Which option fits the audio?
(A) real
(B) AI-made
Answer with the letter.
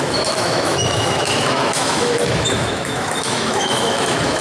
B